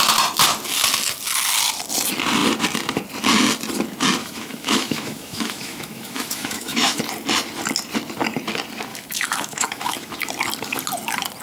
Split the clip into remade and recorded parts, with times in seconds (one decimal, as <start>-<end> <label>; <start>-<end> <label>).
0.0-4.2 recorded; 4.2-7.0 remade; 7.0-8.9 recorded; 8.9-10.3 remade; 10.3-11.4 recorded